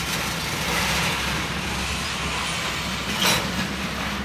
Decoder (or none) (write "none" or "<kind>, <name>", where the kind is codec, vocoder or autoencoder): none